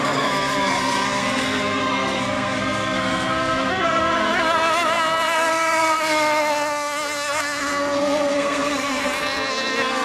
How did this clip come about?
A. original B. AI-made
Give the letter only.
B